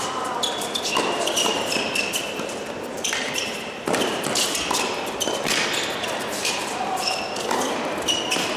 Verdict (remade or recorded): remade